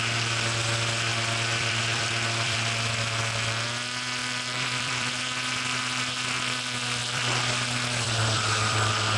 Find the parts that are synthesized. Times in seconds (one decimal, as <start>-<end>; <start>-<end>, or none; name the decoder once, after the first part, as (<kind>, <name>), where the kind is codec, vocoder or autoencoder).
1.1-3.2 (vocoder, BigVGAN v2); 4.2-5.1; 7.0-9.2